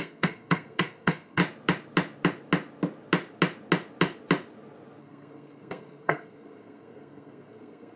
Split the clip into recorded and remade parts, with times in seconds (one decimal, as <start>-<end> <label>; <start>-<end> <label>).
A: 0.0-1.4 remade; 1.4-5.0 recorded; 5.0-8.0 remade